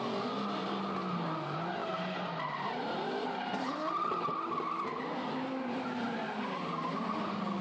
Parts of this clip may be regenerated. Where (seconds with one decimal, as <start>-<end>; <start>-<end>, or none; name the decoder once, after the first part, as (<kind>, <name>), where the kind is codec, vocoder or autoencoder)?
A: 1.8-3.7 (vocoder, BigVGAN v2)